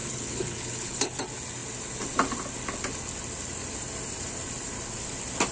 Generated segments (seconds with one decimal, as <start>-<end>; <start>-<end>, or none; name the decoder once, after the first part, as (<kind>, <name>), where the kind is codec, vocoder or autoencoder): 0.0-1.2 (codec, HILCodec)